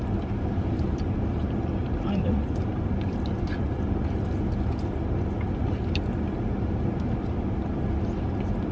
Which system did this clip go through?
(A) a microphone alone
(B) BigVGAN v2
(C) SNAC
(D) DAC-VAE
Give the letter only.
A